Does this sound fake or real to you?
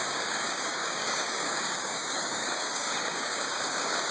fake